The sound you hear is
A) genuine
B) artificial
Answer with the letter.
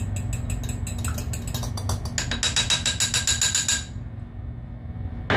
A